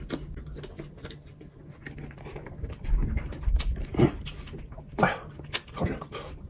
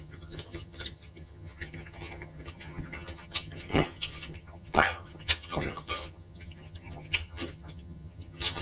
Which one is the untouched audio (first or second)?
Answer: first